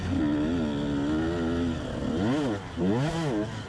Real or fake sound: real